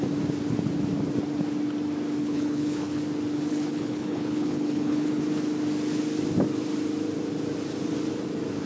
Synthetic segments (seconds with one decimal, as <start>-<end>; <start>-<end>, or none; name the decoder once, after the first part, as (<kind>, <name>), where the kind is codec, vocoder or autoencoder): 2.2-3.0 (codec, HILCodec); 3.5-5.2